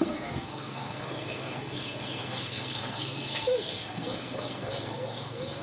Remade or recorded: remade